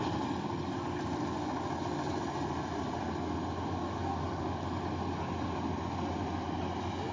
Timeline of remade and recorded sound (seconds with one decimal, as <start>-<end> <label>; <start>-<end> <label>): 0.0-3.8 recorded; 3.8-4.8 remade; 4.8-7.1 recorded